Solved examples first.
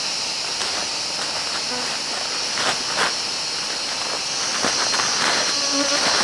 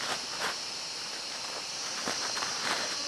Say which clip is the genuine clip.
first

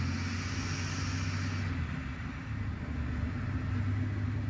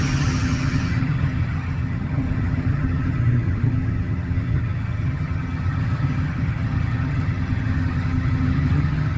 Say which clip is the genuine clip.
first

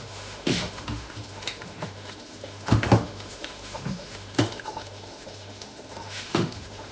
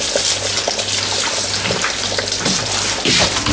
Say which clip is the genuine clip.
second